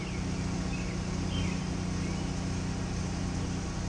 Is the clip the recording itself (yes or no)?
yes